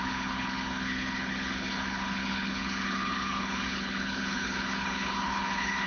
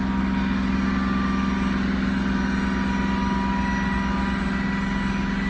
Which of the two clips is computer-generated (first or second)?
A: first